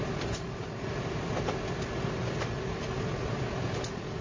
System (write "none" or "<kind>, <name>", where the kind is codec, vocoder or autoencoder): none